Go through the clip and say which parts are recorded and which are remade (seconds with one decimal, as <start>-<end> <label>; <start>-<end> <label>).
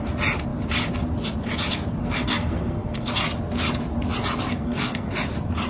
0.0-2.0 recorded; 2.0-3.1 remade; 3.1-4.4 recorded; 4.4-5.1 remade; 5.1-5.7 recorded